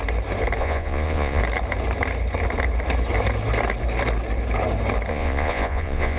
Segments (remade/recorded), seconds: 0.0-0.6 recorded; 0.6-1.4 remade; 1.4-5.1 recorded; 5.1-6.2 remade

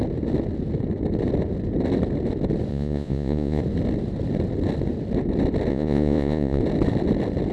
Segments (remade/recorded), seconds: 0.0-2.7 recorded; 2.7-3.6 remade; 3.6-5.7 recorded; 5.7-6.6 remade; 6.6-7.5 recorded

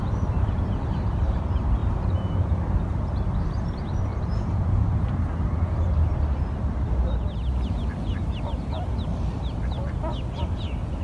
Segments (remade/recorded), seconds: 0.0-1.8 remade; 1.8-2.4 recorded; 2.4-6.1 remade; 6.1-10.4 recorded; 10.4-11.0 remade

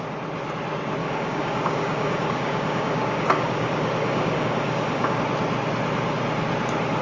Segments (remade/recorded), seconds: 0.0-1.0 recorded; 1.0-5.2 remade; 5.2-7.0 recorded

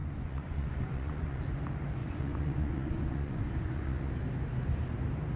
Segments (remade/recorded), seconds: 0.0-1.4 remade; 1.4-2.0 recorded; 2.0-4.1 remade; 4.1-5.4 recorded

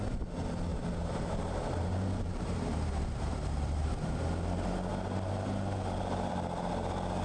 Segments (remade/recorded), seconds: 0.0-0.7 recorded; 0.7-4.1 remade; 4.1-7.2 recorded

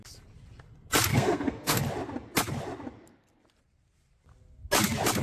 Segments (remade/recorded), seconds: 0.0-1.1 recorded; 1.1-1.8 remade; 1.8-5.2 recorded

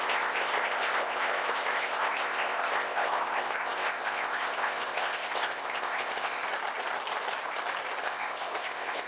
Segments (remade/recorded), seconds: 0.0-6.4 remade; 6.4-8.0 recorded; 8.0-9.1 remade